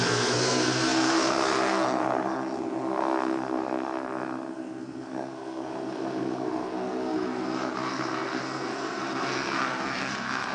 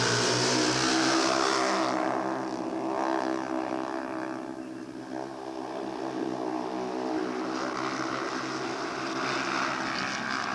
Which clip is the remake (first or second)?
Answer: first